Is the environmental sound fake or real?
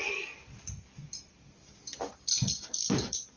fake